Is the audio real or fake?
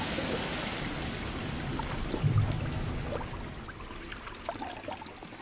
real